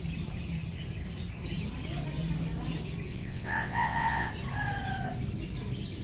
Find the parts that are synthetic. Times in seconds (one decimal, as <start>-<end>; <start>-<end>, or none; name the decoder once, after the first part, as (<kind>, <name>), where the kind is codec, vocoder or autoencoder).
3.1-4.3 (vocoder, WaveNeXt)